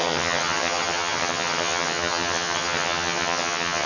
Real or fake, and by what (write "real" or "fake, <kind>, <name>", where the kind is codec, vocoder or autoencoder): fake, vocoder, HiFi-GAN